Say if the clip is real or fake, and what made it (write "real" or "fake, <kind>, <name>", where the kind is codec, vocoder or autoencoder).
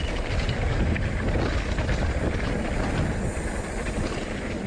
fake, vocoder, BigVGAN v2